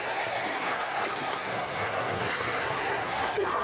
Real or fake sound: fake